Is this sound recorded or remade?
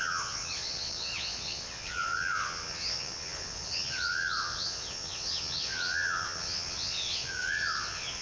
remade